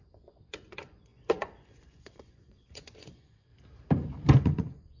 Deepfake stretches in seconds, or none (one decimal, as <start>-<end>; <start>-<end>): 0.0-3.5; 4.3-5.0